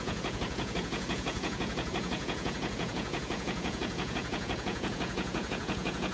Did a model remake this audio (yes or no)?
yes